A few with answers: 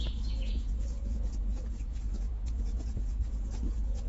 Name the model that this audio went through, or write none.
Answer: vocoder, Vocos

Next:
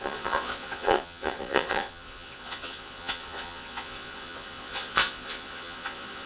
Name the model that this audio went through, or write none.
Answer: vocoder, Vocos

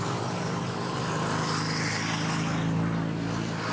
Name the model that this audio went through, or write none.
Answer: none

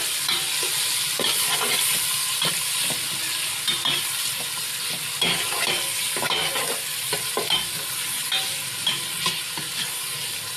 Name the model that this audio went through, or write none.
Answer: none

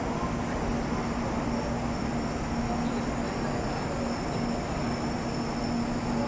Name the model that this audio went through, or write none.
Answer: none